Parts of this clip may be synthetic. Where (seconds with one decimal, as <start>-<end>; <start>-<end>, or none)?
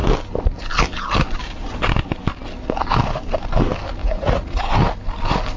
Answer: 4.0-4.7